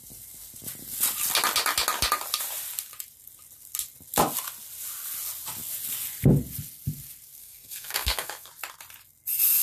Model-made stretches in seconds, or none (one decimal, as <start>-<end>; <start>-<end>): 7.4-8.5